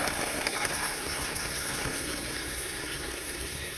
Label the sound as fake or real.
fake